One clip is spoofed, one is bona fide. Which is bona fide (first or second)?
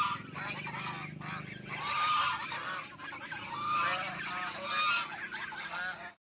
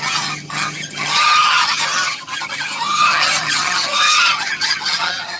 first